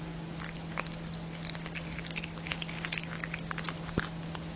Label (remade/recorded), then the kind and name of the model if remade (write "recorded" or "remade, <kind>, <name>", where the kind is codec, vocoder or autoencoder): recorded